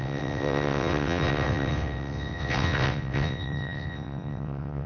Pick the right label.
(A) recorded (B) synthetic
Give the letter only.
B